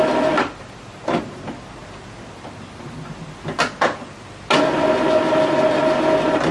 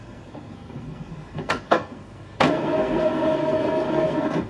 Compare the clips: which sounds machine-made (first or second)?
second